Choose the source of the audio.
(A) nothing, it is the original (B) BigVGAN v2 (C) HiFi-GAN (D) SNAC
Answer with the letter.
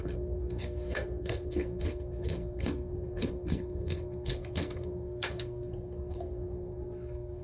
D